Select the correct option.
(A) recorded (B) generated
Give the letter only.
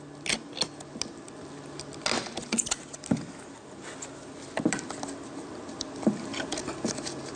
A